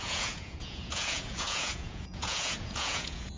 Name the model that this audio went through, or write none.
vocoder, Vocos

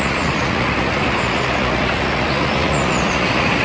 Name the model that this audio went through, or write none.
vocoder, Vocos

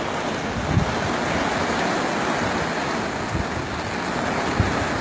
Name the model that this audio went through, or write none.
none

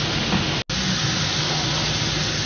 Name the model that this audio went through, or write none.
none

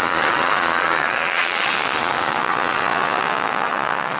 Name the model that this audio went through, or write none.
vocoder, Vocos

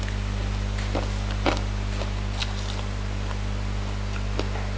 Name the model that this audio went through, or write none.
none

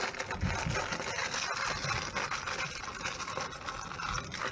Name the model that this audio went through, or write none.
none